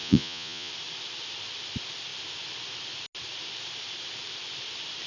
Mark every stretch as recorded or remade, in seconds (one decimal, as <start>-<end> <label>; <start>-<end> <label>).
0.0-0.7 remade; 0.7-5.1 recorded